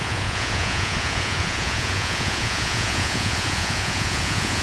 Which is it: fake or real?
fake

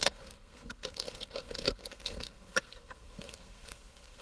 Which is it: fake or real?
fake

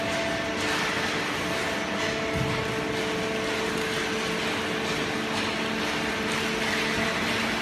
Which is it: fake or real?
real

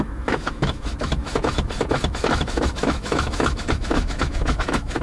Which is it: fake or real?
fake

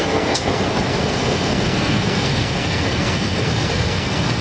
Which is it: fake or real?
fake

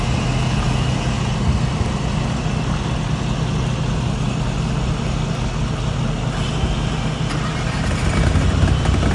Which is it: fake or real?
real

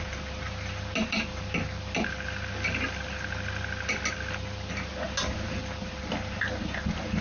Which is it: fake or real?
real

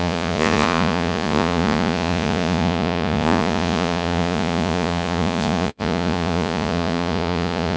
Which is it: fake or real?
fake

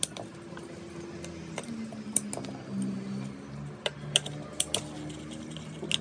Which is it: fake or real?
real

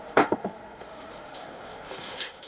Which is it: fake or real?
fake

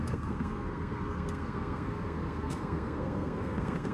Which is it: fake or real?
fake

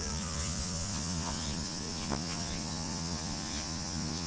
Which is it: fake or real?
fake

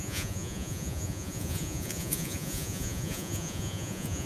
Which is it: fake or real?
fake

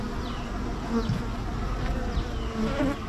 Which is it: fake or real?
real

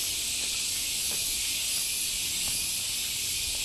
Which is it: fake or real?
real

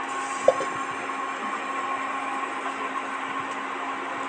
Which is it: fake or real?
real